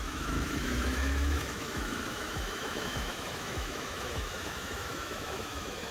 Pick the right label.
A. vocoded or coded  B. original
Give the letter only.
A